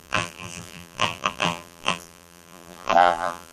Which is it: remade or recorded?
remade